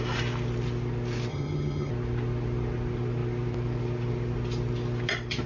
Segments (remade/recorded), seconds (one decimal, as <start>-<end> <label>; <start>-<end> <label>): 0.0-1.3 recorded; 1.3-1.9 remade; 1.9-5.5 recorded